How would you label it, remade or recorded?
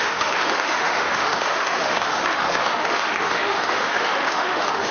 remade